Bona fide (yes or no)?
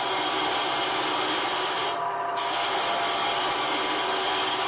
yes